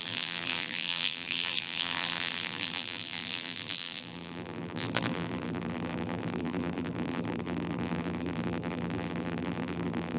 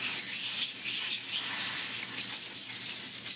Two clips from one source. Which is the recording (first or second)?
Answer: second